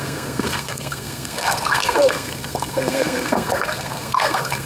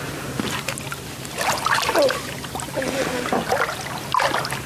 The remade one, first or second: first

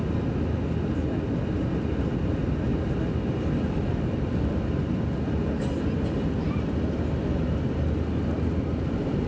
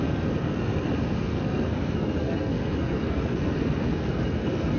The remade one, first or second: second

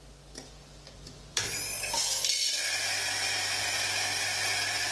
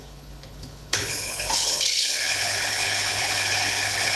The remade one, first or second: second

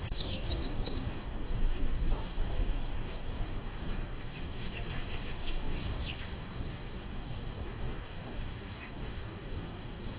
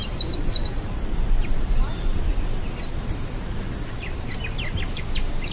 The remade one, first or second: first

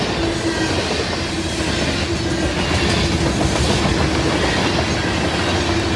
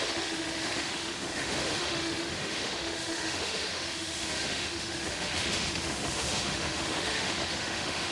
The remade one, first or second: second